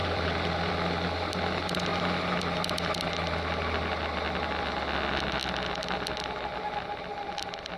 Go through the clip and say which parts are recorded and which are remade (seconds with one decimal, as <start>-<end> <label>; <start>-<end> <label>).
0.0-0.7 remade; 0.7-7.8 recorded